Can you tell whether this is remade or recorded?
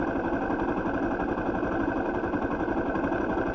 recorded